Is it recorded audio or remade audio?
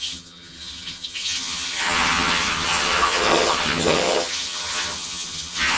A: remade